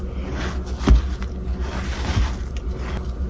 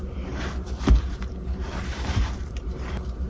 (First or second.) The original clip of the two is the first